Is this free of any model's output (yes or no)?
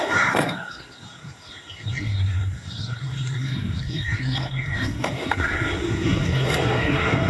no